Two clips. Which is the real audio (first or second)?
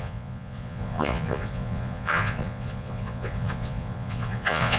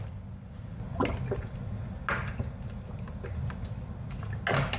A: second